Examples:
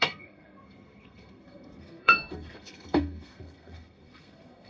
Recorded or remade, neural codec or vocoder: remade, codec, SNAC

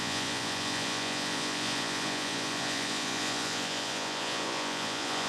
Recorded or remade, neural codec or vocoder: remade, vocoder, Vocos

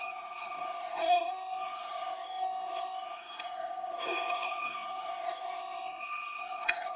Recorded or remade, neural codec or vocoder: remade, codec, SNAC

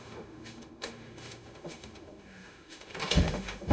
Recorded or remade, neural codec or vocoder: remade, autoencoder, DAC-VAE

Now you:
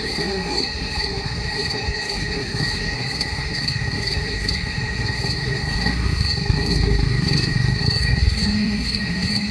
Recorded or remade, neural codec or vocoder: remade, codec, SNAC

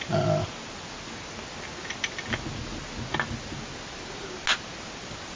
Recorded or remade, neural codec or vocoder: recorded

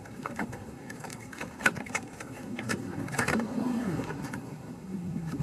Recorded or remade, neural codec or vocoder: remade, codec, SNAC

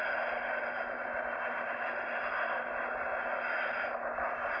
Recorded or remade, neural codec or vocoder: recorded